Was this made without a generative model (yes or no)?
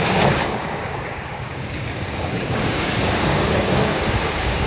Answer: no